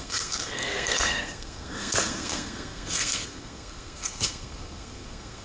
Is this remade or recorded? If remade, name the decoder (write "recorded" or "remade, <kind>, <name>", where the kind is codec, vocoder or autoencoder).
remade, codec, SNAC